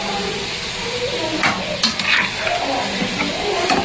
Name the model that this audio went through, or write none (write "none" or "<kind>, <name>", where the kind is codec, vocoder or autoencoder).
none